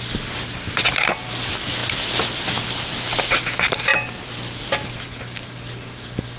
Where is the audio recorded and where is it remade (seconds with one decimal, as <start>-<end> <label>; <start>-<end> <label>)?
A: 0.0-6.4 recorded